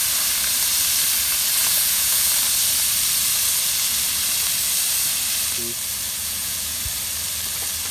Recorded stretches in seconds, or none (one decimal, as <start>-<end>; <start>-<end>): 0.0-1.7; 2.3-6.2; 6.8-7.9